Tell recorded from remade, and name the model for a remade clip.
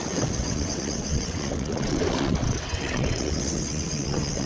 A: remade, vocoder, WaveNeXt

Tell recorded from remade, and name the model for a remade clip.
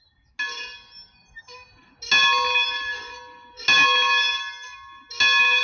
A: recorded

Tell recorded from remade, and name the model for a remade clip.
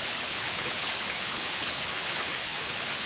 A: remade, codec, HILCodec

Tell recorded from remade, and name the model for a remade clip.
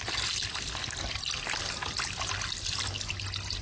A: recorded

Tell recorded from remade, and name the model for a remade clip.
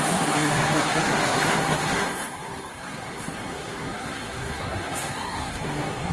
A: remade, codec, SNAC